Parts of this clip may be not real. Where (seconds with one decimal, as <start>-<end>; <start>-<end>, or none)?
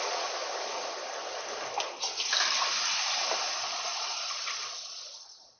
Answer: 0.0-0.4; 3.5-5.6